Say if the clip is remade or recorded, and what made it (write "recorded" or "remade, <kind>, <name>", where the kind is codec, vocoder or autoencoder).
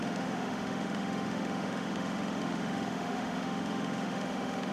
remade, autoencoder, DAC-VAE